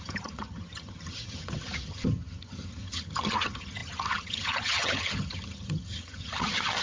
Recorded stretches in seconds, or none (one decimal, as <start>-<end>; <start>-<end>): none